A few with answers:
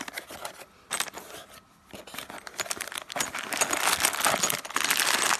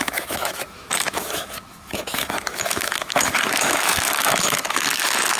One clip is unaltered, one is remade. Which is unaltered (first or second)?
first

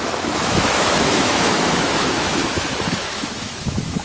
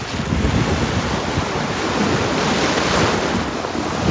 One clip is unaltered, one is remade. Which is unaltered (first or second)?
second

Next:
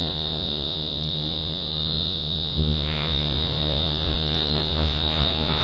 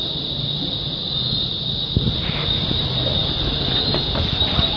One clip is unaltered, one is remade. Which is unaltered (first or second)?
second